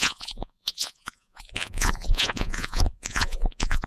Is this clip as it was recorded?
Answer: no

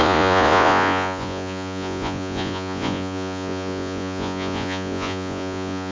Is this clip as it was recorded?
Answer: no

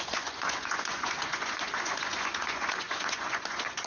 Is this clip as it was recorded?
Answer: no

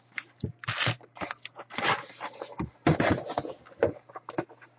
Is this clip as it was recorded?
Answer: yes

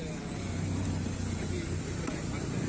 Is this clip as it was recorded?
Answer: yes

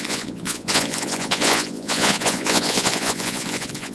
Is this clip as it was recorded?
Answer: no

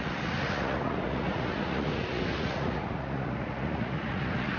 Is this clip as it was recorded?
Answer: no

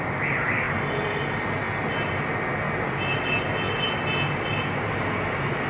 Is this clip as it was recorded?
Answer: yes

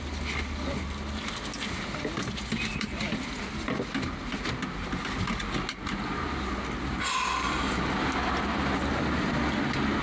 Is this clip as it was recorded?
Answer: yes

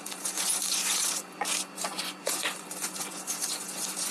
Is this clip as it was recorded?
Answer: no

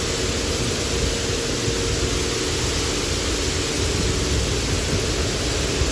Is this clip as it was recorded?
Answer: yes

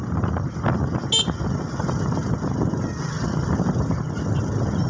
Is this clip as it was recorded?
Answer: yes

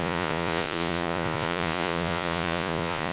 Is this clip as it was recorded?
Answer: no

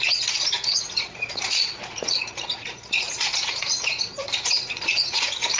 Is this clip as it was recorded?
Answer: no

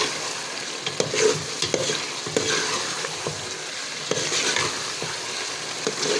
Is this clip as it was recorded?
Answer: yes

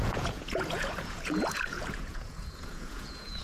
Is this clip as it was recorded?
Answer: no